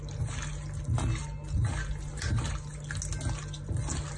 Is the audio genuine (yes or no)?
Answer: yes